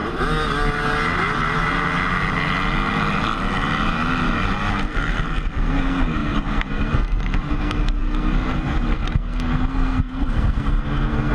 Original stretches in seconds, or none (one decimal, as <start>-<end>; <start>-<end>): 0.0-4.7